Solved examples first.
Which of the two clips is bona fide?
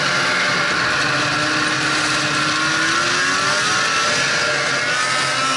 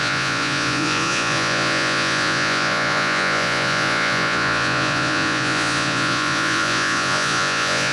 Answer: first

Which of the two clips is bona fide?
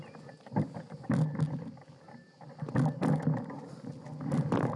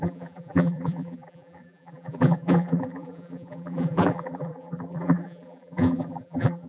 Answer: first